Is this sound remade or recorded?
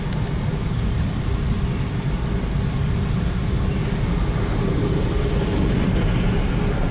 recorded